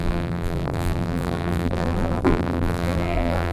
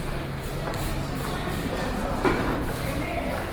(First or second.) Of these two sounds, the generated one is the first